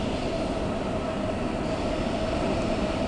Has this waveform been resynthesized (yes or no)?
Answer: no